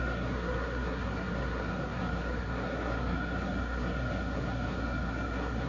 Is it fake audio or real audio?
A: fake